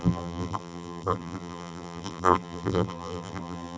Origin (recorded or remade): remade